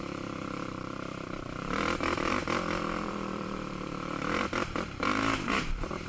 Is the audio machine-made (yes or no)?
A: yes